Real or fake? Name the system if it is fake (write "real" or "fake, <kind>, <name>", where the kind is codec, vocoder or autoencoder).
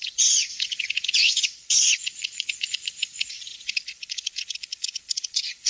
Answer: fake, vocoder, Vocos